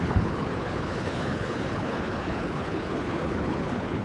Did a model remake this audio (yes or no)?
yes